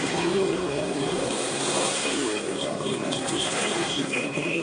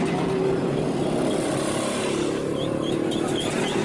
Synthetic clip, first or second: first